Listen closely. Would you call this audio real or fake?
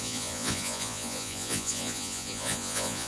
fake